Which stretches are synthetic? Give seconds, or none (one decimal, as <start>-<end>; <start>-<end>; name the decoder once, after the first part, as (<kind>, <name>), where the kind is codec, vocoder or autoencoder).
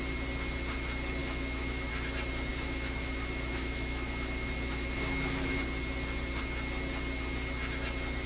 1.2-1.9 (autoencoder, DAC-VAE); 2.5-5.6